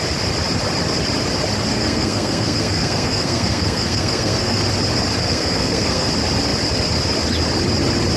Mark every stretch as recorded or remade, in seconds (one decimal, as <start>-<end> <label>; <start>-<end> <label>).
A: 0.0-1.7 recorded; 1.7-4.6 remade; 4.6-5.2 recorded; 5.2-6.1 remade; 6.1-8.2 recorded